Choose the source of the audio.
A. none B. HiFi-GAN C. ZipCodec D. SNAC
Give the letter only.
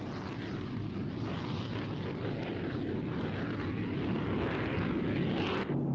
A